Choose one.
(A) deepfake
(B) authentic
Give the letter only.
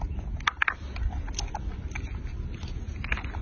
B